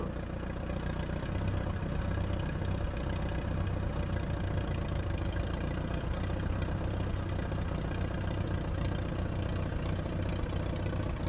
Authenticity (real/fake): real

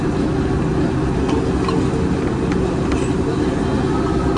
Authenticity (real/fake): real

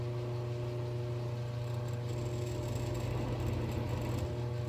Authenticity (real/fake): real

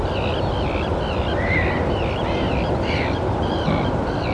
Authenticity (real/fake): real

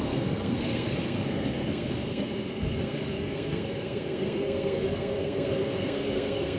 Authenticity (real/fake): fake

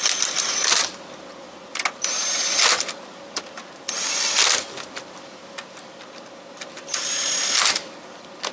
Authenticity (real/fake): real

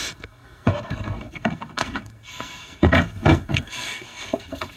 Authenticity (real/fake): fake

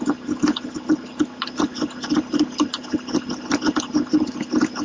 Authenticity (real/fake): real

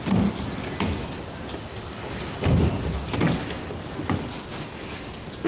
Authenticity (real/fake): real